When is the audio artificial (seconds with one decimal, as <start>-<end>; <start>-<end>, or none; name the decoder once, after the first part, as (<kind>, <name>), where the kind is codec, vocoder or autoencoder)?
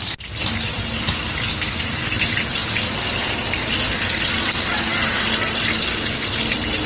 none